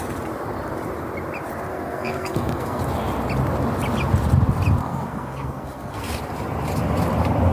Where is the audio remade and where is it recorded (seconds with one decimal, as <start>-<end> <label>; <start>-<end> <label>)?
0.0-1.7 recorded; 1.7-2.8 remade; 2.8-4.8 recorded; 4.8-6.2 remade; 6.2-7.5 recorded